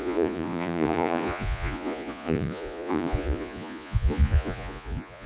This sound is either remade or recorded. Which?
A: remade